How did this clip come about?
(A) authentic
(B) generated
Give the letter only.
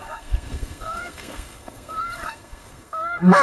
B